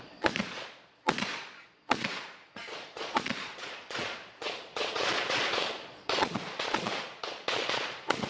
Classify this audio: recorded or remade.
remade